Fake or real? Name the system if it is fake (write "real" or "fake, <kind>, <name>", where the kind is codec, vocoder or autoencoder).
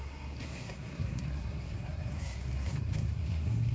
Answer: fake, codec, SNAC